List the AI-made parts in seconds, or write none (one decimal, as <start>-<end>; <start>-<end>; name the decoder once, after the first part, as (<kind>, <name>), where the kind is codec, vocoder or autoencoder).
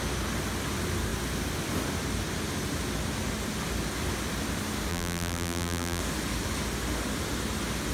4.9-6.0 (vocoder, BigVGAN v2)